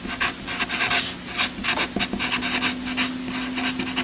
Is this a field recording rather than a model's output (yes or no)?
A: yes